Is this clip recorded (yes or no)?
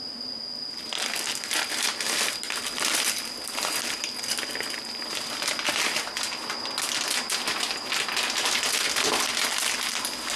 yes